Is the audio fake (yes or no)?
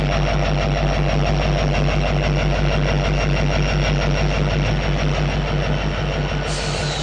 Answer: no